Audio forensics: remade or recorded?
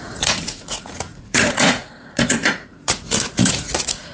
remade